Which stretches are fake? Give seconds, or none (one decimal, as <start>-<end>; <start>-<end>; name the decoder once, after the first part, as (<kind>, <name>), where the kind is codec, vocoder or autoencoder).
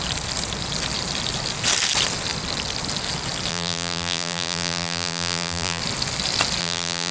3.5-5.8 (vocoder, BigVGAN v2); 6.6-7.1